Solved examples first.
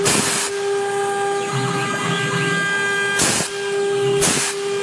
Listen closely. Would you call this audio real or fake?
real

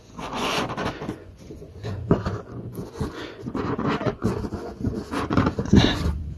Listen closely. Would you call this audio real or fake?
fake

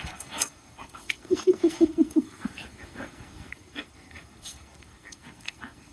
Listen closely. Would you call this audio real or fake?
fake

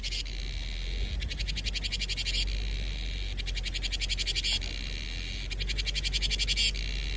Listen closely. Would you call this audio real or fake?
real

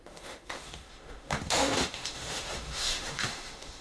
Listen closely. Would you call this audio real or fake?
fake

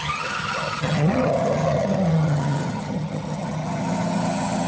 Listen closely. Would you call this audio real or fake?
fake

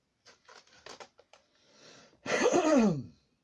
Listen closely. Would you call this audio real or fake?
real